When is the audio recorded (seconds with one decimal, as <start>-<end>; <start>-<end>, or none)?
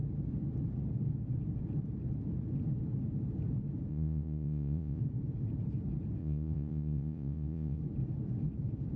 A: 0.0-3.9; 5.0-6.2; 7.8-9.0